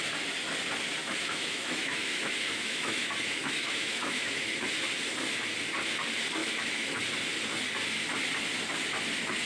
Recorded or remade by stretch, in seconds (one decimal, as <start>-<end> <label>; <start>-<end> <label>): 0.0-1.0 recorded; 1.0-4.7 remade; 4.7-6.4 recorded; 6.4-7.0 remade; 7.0-9.5 recorded